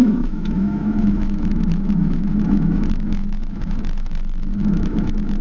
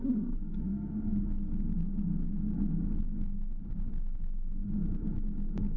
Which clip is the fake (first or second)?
first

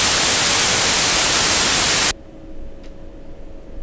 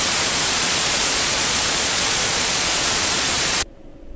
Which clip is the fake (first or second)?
second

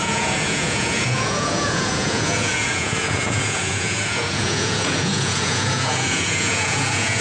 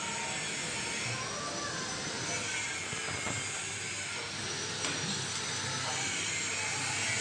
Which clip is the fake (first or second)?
first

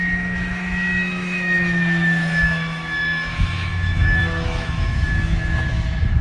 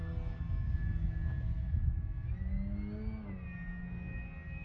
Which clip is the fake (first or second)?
first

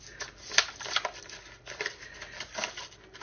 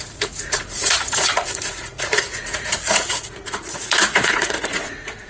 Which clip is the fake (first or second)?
second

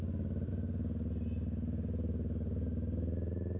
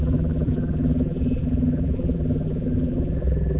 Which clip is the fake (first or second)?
second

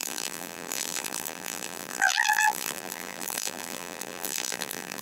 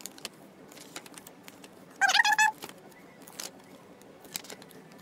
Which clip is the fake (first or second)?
first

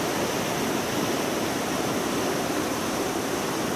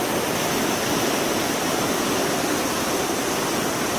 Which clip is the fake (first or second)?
second